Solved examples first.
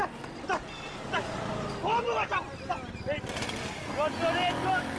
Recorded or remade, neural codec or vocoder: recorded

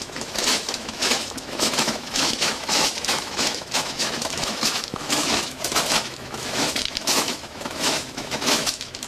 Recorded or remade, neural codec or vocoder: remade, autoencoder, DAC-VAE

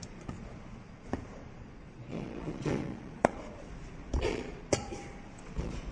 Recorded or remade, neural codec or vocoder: remade, vocoder, Vocos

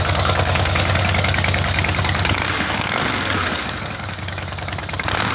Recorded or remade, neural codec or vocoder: remade, codec, DAC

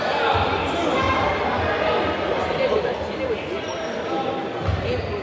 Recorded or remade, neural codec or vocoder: recorded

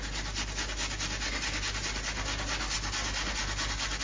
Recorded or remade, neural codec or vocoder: recorded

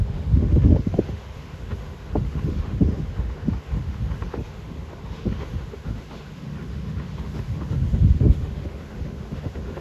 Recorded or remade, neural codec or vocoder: remade, autoencoder, DAC-VAE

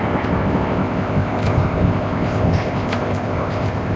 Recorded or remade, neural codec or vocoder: remade, codec, ZipCodec